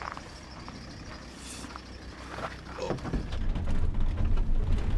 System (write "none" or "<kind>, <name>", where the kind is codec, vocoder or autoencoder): none